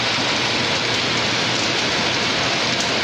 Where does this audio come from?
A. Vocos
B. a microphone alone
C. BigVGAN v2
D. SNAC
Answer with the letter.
B